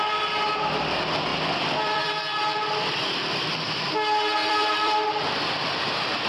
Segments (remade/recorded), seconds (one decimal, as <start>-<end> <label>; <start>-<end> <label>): 0.0-1.3 recorded; 1.3-2.1 remade; 2.1-4.4 recorded; 4.4-6.3 remade